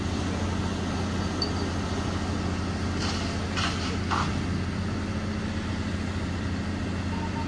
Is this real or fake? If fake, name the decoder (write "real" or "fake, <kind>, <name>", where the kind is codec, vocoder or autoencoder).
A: real